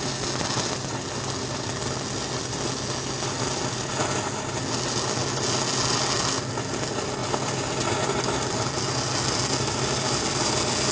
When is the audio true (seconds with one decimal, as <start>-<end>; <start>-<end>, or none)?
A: 0.0-10.9

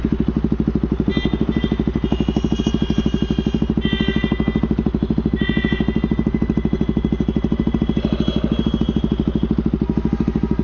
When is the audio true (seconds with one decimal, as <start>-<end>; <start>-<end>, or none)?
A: 0.0-10.6

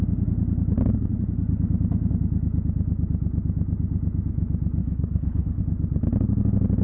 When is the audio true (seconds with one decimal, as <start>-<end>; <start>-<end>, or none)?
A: 0.0-4.8; 5.6-6.8

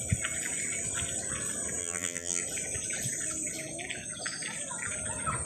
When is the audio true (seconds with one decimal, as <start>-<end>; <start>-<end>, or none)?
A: 0.0-1.8; 2.4-5.5

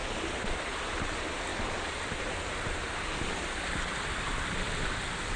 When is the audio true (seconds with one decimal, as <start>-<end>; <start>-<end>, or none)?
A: 0.9-1.5; 2.2-5.4

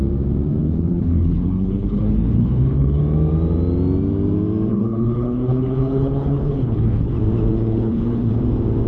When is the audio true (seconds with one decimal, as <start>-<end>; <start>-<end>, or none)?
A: 0.0-0.6; 3.0-4.7; 7.1-7.5; 8.4-8.9

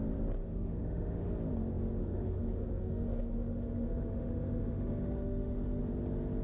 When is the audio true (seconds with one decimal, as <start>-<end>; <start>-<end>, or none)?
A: 0.0-0.4; 1.3-2.0; 5.8-6.4